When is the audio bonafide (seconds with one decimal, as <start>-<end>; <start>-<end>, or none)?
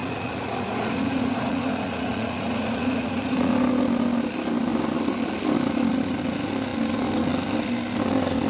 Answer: 3.5-8.5